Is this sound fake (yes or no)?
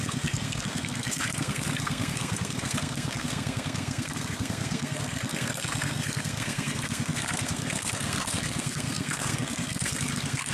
yes